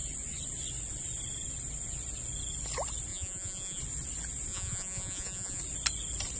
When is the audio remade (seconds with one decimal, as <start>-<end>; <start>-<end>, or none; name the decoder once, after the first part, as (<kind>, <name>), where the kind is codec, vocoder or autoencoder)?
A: 3.1-3.8 (vocoder, Vocos); 4.5-5.6